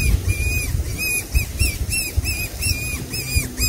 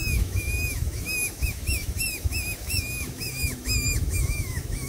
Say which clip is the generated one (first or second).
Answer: second